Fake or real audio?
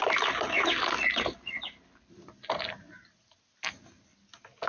real